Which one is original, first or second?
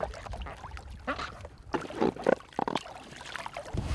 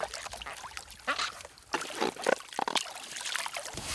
second